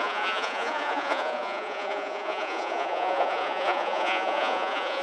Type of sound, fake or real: fake